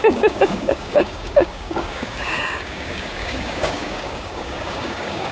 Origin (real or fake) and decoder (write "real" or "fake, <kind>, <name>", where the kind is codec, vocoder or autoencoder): fake, codec, DAC